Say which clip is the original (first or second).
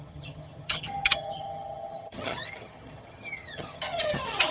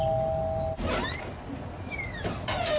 second